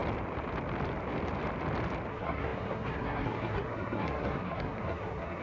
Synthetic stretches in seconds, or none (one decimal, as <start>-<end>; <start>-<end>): 2.1-5.4